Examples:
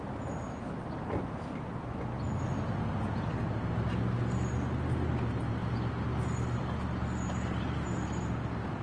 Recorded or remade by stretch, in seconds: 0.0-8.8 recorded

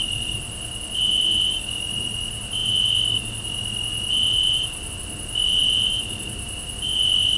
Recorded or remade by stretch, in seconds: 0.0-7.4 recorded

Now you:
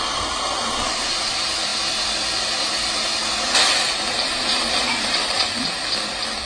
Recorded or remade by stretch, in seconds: 0.0-6.5 recorded